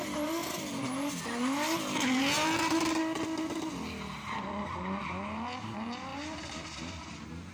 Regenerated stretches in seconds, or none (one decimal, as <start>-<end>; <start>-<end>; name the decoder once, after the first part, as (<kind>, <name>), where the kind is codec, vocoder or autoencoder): 6.1-7.0 (vocoder, BigVGAN v2)